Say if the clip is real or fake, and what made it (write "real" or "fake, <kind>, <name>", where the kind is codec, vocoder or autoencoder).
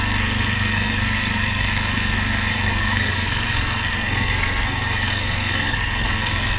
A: fake, codec, SNAC